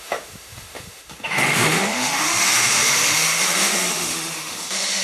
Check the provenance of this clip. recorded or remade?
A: remade